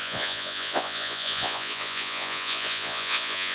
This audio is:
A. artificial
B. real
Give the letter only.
A